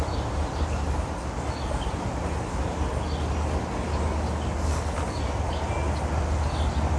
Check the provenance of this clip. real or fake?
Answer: real